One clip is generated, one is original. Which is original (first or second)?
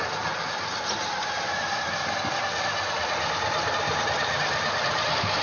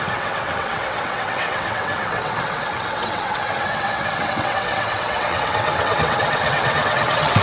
first